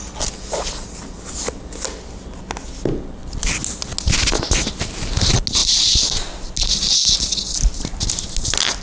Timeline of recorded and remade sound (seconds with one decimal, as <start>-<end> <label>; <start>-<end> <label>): 0.0-8.8 recorded